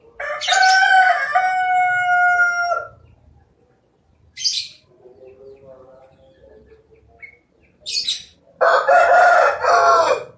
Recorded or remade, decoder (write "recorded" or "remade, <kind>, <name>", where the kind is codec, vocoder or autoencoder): recorded